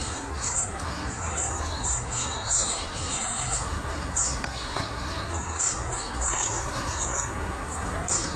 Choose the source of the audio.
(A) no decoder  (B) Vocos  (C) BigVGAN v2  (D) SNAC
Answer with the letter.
D